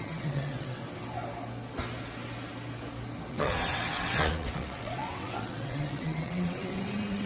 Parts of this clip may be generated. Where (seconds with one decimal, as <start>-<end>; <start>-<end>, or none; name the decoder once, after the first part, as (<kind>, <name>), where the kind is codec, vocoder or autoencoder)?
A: 0.0-0.8 (vocoder, WaveNeXt); 3.3-7.3